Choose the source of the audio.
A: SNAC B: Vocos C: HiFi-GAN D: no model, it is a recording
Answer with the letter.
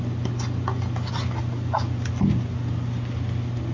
D